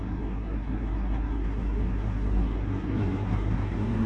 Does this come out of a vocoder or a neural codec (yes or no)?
yes